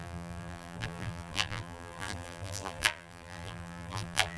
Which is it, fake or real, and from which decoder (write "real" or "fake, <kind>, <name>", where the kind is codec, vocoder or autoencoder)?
fake, vocoder, BigVGAN v2